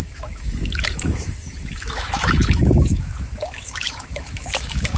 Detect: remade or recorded remade